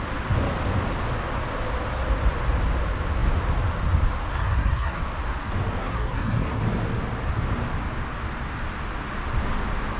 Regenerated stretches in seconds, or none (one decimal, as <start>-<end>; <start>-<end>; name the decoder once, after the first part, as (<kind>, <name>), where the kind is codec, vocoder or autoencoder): 4.3-5.0 (codec, SNAC); 5.8-6.6